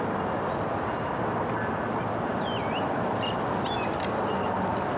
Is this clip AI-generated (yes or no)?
no